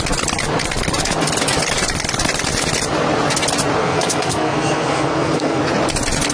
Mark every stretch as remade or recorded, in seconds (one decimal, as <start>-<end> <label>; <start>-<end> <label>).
0.0-3.8 recorded; 3.8-5.6 remade; 5.6-6.3 recorded